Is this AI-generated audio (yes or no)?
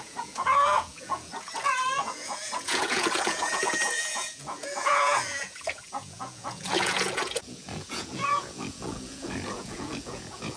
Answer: yes